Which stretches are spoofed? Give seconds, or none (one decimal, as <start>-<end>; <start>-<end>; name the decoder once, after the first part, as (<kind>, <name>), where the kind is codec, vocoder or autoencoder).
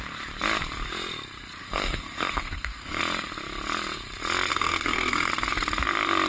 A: 1.6-3.0 (codec, SNAC); 4.5-5.3